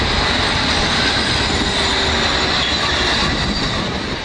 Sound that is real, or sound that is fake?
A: real